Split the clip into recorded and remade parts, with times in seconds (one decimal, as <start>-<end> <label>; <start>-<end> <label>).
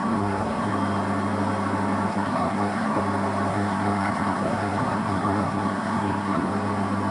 0.0-0.7 remade; 0.7-2.1 recorded; 2.1-3.0 remade; 3.0-3.5 recorded; 3.5-6.5 remade; 6.5-7.1 recorded